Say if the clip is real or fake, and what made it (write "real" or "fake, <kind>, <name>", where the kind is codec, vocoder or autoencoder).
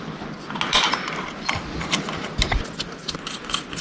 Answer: real